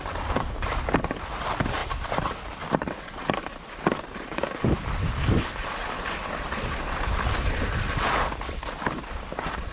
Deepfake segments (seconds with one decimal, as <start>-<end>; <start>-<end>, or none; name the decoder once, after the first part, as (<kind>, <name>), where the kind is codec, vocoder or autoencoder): none